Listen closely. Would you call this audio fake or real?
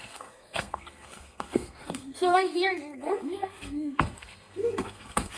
fake